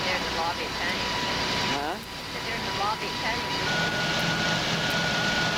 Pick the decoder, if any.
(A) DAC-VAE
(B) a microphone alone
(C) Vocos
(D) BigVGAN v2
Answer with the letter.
B